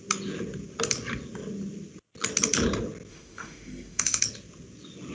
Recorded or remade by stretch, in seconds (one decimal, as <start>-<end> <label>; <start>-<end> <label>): 0.0-3.1 recorded; 3.1-4.2 remade; 4.2-5.1 recorded